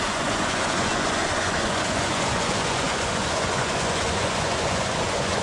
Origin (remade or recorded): remade